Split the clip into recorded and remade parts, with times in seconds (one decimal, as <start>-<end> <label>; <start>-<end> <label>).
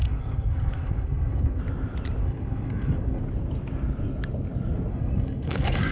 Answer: 0.0-1.6 remade; 1.6-2.2 recorded; 2.2-3.2 remade; 3.2-4.9 recorded; 4.9-5.9 remade